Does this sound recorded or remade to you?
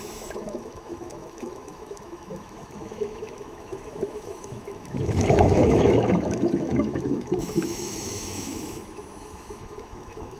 remade